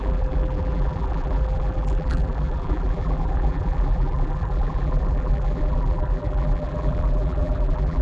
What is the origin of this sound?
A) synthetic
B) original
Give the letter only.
A